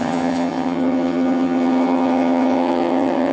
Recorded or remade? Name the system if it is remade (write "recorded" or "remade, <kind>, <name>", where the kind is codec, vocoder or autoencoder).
remade, vocoder, HiFi-GAN